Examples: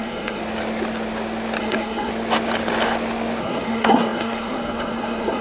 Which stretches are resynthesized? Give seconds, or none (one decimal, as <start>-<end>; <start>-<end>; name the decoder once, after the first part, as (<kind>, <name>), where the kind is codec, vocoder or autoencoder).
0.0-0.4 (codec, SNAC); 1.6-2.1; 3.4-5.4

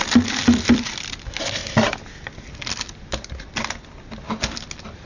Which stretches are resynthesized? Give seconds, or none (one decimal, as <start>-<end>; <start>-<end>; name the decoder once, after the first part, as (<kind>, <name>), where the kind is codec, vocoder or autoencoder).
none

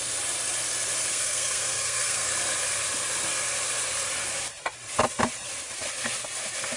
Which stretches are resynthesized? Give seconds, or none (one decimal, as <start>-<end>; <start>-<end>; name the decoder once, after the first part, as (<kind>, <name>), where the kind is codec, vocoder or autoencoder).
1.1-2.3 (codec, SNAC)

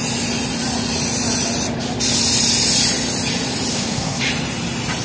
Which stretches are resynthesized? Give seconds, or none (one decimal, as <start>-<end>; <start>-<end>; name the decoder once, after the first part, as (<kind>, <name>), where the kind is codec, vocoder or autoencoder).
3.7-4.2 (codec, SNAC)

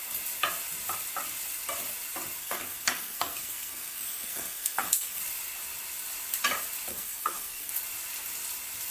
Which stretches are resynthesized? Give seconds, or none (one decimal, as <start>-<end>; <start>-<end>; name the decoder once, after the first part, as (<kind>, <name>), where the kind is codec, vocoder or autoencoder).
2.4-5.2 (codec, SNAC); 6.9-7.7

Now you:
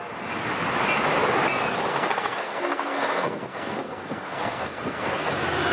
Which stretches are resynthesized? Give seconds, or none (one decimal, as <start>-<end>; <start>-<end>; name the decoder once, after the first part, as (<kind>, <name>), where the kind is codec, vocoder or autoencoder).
1.9-5.3 (codec, SNAC)

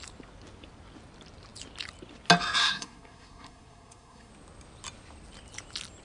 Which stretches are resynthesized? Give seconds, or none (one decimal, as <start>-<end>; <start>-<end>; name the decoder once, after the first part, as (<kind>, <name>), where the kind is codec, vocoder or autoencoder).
2.6-4.3 (codec, SNAC)

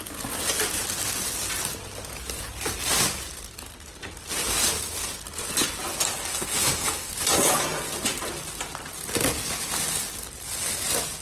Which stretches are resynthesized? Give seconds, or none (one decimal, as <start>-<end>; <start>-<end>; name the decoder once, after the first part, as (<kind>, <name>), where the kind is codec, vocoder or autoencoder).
6.3-7.1 (codec, SNAC)